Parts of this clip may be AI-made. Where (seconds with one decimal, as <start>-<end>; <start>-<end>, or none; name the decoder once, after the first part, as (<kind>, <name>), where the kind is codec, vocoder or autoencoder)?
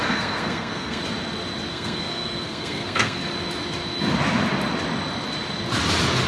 0.0-1.0 (codec, SNAC); 1.7-3.2